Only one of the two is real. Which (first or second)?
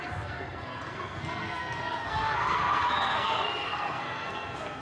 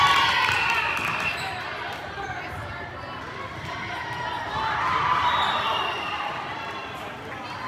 second